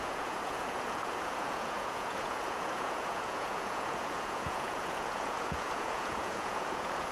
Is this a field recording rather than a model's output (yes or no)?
no